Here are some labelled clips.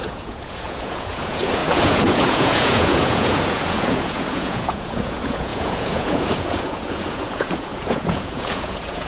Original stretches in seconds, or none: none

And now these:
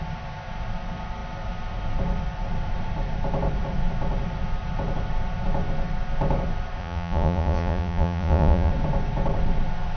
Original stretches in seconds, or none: 0.0-6.8; 8.7-10.0

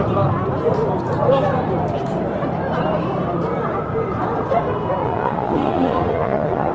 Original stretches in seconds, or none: 0.0-5.0

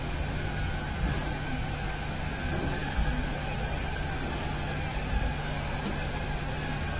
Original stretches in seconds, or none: 0.0-1.2; 1.7-7.0